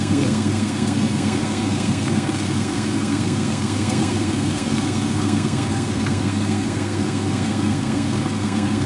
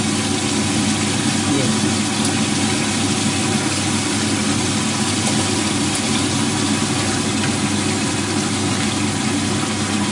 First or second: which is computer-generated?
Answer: first